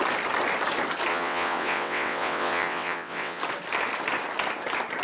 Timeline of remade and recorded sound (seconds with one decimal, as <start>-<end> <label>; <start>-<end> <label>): 0.0-1.1 recorded; 1.1-3.4 remade; 3.4-5.0 recorded